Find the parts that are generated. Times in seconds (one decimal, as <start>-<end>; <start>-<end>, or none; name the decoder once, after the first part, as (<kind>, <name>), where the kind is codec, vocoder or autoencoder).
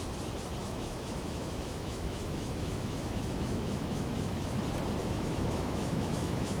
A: 0.6-4.6 (autoencoder, DAC-VAE); 5.0-6.6